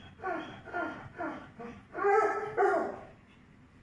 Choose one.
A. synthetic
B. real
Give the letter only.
B